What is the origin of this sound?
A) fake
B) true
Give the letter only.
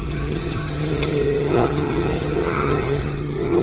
A